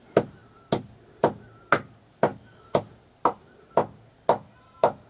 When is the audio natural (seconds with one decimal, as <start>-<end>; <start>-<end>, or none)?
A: 0.0-5.1